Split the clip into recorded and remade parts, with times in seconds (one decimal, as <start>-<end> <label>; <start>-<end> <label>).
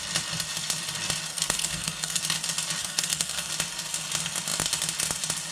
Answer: 0.0-1.3 recorded; 1.3-2.2 remade; 2.2-2.8 recorded; 2.8-3.5 remade; 3.5-5.5 recorded